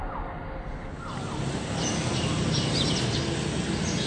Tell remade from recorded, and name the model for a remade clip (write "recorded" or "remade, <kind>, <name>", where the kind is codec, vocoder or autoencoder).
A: recorded